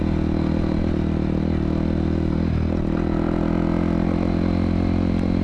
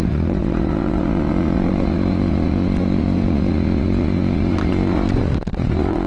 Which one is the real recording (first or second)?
first